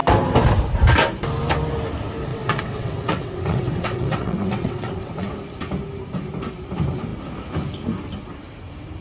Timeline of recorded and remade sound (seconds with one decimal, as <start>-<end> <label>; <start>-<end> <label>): 0.0-2.3 recorded; 2.3-5.3 remade; 5.3-9.0 recorded